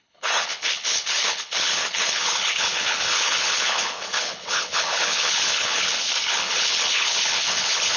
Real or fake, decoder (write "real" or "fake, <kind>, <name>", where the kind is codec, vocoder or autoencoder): fake, codec, HILCodec